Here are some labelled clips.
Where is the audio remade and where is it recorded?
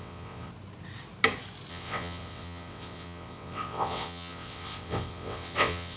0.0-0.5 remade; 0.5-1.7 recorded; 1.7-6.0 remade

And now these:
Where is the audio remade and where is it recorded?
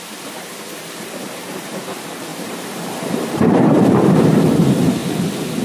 0.0-5.0 remade; 5.0-5.6 recorded